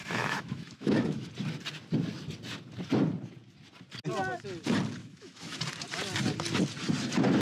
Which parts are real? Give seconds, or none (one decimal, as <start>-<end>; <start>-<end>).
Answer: 1.3-5.0; 5.6-7.4